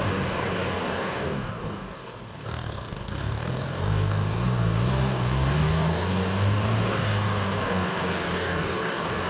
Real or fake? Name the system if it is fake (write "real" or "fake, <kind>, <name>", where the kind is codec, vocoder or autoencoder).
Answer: fake, codec, DAC